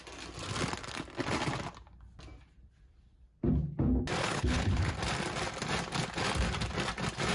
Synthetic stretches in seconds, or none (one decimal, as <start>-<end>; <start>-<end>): 4.2-4.9